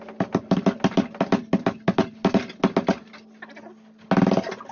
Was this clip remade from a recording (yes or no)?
no